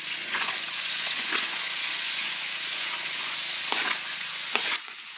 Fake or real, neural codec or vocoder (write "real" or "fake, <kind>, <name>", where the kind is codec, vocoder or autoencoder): fake, vocoder, Vocos